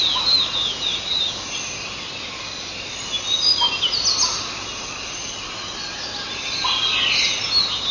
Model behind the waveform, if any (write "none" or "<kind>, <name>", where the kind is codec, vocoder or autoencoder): none